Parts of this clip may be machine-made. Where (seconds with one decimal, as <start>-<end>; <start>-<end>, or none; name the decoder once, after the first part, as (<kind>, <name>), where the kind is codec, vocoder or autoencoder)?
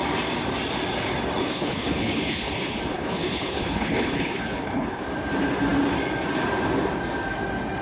1.4-5.0 (codec, HILCodec)